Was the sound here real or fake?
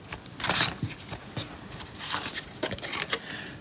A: real